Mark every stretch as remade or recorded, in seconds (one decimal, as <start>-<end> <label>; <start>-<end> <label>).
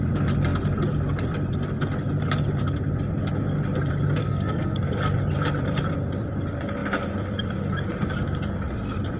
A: 0.0-4.2 recorded; 4.2-4.9 remade; 4.9-9.2 recorded